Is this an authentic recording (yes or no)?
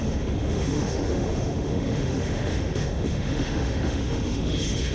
no